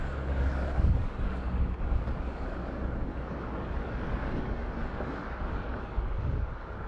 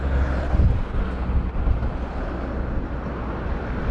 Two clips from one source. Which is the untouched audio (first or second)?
second